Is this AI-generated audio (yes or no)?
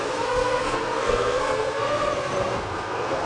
yes